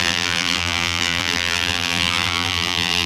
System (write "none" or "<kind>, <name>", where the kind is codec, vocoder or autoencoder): vocoder, BigVGAN v2